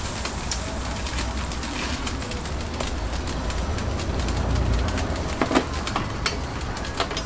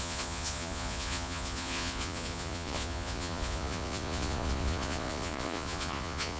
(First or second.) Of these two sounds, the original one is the first